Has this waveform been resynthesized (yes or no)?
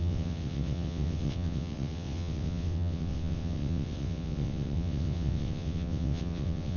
yes